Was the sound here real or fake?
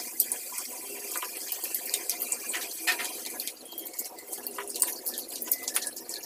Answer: real